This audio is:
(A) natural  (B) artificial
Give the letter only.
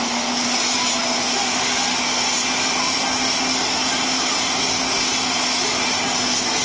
A